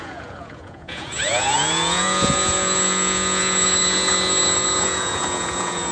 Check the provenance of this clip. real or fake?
fake